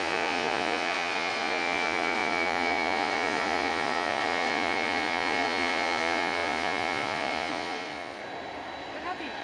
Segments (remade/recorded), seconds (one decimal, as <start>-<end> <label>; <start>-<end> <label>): 0.0-8.2 remade; 8.2-9.4 recorded